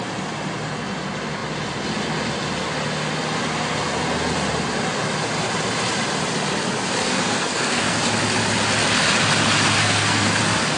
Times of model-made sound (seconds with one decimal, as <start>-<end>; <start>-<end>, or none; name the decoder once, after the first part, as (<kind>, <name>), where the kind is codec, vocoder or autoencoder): 7.0-8.0 (codec, SNAC); 9.8-10.4